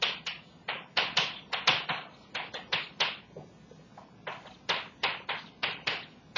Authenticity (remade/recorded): recorded